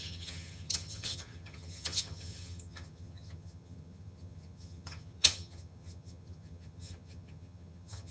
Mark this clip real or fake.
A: fake